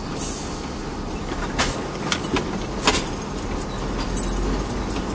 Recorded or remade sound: recorded